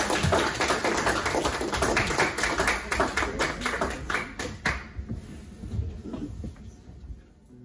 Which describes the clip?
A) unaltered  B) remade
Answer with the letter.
A